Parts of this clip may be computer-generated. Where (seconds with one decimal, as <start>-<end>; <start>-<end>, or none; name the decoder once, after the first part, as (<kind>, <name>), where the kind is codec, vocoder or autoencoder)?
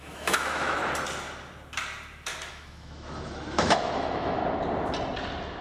0.0-0.8 (autoencoder, DAC-VAE); 2.5-4.4